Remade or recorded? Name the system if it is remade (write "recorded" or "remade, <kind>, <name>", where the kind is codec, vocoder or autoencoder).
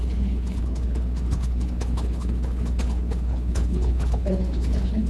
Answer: remade, codec, HILCodec